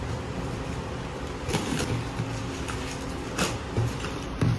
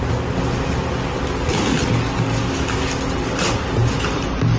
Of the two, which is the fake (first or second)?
first